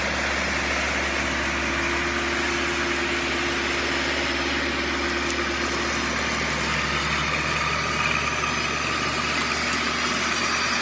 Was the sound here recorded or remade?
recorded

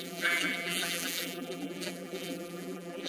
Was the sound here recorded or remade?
remade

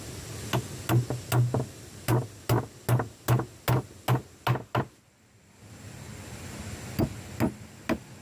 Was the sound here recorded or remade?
recorded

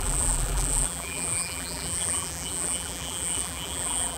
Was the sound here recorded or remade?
remade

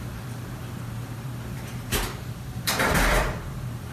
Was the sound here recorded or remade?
remade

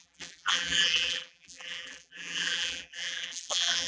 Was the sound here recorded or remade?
remade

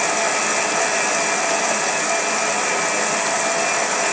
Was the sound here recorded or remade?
recorded